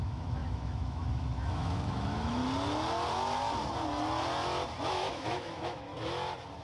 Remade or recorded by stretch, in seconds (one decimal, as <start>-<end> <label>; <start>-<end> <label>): 0.0-2.4 remade; 2.4-4.9 recorded; 4.9-5.9 remade; 5.9-6.6 recorded